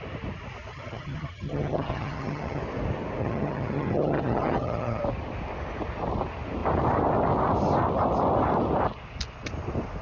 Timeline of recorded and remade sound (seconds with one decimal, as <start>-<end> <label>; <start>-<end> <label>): 0.0-0.7 recorded; 0.7-2.6 remade; 2.6-3.2 recorded; 3.2-5.0 remade; 5.0-10.0 recorded